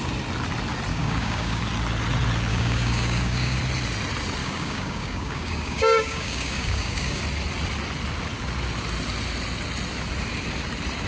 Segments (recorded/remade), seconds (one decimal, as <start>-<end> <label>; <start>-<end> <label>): 0.0-0.9 recorded; 0.9-1.6 remade; 1.6-2.5 recorded; 2.5-3.6 remade; 3.6-4.4 recorded; 4.4-7.2 remade; 7.2-11.1 recorded